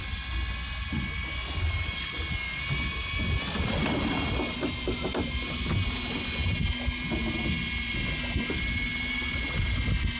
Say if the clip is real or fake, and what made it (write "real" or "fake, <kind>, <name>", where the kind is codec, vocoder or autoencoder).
real